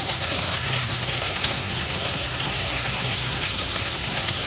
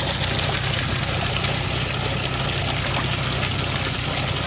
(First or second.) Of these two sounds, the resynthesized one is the first